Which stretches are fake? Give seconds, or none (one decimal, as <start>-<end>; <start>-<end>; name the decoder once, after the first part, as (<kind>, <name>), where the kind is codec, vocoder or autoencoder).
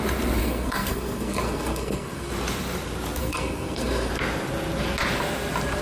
0.4-2.3 (codec, SNAC); 3.2-4.1